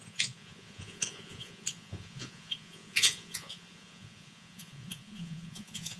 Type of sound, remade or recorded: remade